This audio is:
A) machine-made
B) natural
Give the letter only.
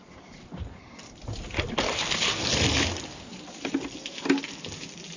B